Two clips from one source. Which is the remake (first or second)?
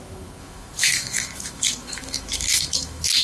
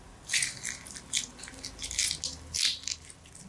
first